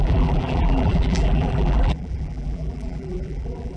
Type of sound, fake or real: fake